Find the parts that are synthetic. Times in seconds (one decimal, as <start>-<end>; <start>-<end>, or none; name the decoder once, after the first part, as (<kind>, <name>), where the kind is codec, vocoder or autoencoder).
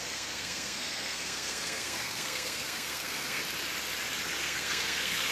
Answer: 0.0-3.4 (codec, SNAC); 4.4-5.3